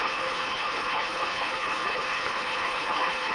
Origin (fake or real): fake